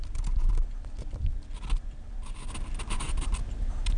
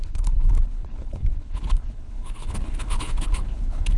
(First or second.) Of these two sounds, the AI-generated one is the second